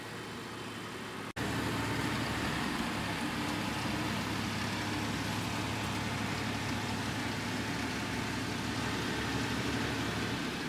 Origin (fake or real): real